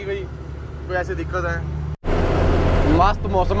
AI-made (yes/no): no